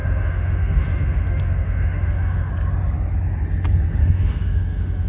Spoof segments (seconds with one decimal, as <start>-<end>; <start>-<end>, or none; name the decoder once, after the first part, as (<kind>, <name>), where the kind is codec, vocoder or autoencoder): 0.0-2.5 (autoencoder, DAC-VAE); 4.0-5.1